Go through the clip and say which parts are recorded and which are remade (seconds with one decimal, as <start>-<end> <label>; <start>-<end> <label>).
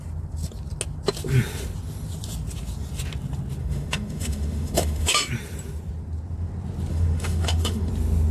0.0-3.6 recorded; 3.6-5.3 remade; 5.3-6.9 recorded; 6.9-7.9 remade; 7.9-8.3 recorded